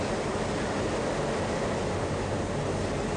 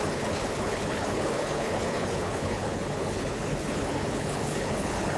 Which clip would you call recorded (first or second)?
first